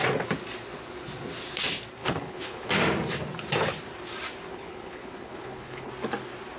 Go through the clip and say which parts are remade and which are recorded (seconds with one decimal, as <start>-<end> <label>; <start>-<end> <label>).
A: 0.0-2.0 recorded; 2.0-2.7 remade; 2.7-4.5 recorded; 4.5-5.9 remade; 5.9-6.6 recorded